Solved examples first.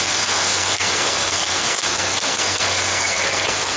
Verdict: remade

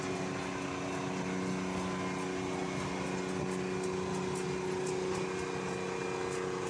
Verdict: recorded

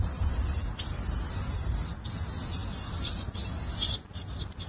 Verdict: recorded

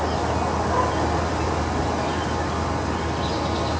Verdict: recorded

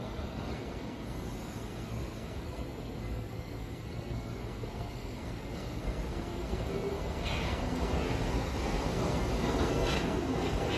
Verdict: remade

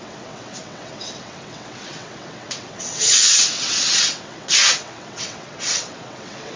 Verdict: remade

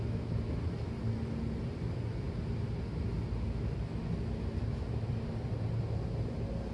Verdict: recorded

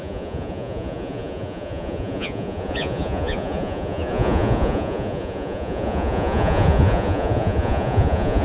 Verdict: remade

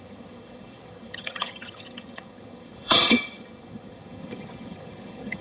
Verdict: remade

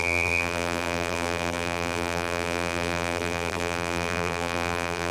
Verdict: remade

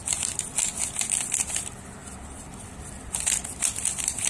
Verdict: recorded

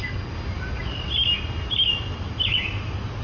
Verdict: recorded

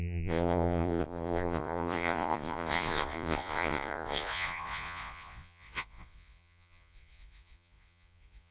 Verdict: remade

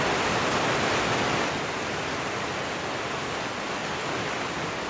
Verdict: recorded